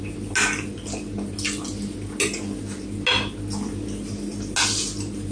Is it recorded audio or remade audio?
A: recorded